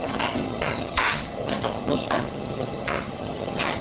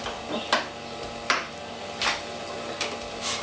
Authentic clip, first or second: second